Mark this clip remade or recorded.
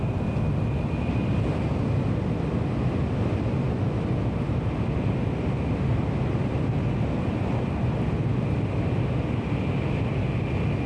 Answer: recorded